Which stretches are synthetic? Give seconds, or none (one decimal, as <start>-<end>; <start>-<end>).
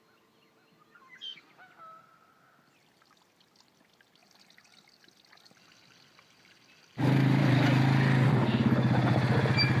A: none